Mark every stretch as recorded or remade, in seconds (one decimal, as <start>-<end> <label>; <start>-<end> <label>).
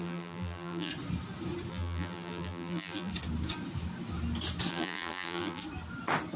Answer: 0.0-0.9 remade; 0.9-1.7 recorded; 1.7-3.1 remade; 3.1-4.7 recorded; 4.7-5.6 remade; 5.6-6.4 recorded